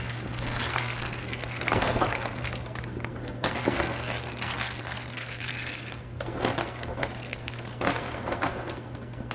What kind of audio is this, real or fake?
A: fake